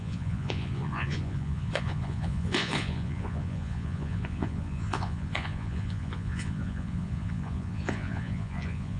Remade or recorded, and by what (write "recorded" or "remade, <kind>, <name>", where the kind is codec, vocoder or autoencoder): remade, vocoder, Vocos